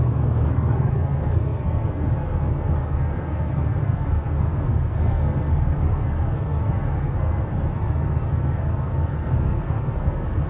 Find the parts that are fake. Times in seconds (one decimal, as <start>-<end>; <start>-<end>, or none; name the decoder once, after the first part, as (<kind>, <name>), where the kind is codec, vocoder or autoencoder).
0.0-10.5 (codec, SNAC)